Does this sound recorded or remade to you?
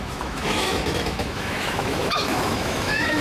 remade